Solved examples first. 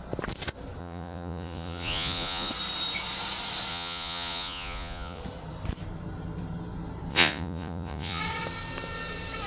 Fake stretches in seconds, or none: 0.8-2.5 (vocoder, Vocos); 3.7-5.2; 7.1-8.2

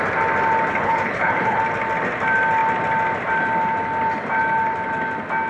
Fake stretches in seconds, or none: 0.7-1.6 (codec, HILCodec)

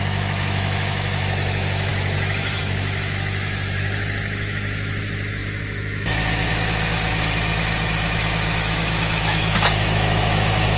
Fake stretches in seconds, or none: 0.0-10.8 (autoencoder, DAC-VAE)

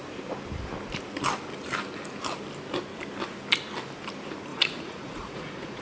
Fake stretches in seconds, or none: 4.5-5.8 (vocoder, Vocos)

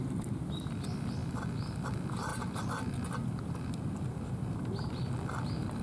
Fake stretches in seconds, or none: 0.0-1.2 (vocoder, BigVGAN v2); 1.9-2.3